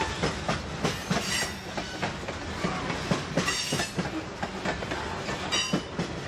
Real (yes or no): yes